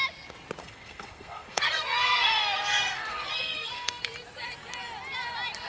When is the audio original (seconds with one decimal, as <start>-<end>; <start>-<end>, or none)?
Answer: 0.0-0.6; 4.0-5.7